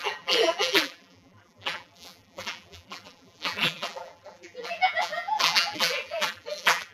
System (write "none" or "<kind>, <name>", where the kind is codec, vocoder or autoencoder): vocoder, BigVGAN v2